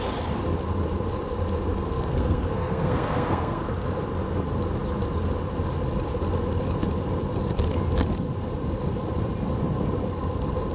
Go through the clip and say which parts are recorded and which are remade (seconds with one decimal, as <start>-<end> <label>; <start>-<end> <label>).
0.0-1.7 recorded; 1.7-3.6 remade; 3.6-10.7 recorded